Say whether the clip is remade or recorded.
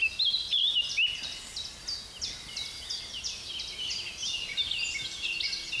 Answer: recorded